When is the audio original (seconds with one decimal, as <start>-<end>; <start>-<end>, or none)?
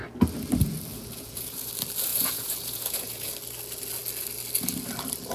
0.0-0.9; 1.7-2.1; 3.3-5.3